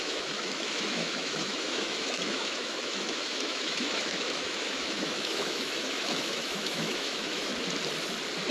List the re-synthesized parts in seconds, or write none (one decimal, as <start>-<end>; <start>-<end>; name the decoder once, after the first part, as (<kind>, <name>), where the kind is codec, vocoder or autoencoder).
0.0-7.5 (autoencoder, DAC-VAE)